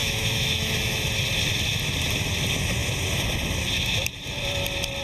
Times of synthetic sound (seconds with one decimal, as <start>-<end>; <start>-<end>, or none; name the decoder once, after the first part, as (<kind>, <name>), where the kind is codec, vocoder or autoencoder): 0.0-1.1 (autoencoder, DAC-VAE)